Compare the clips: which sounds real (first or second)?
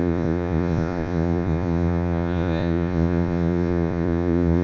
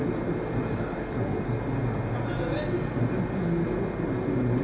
second